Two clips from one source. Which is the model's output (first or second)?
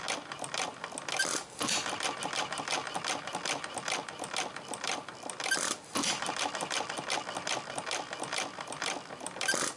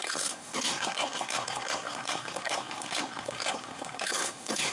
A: second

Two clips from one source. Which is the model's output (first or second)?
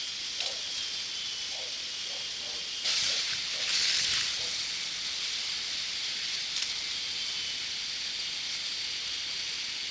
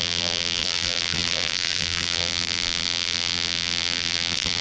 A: second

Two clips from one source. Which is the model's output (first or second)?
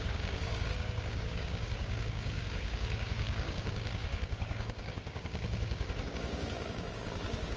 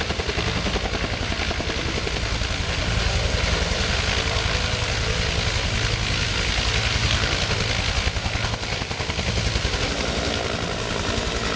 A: first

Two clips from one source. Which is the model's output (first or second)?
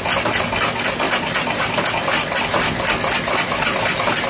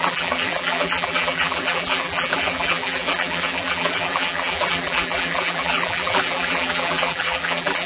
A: second